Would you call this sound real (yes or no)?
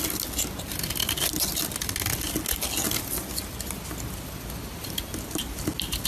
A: yes